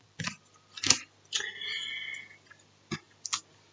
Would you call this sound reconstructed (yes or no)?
no